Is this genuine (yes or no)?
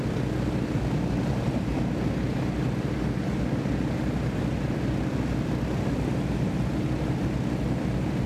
yes